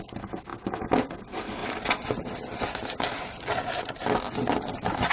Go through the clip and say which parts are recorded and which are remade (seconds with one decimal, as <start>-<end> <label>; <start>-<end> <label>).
0.0-5.1 recorded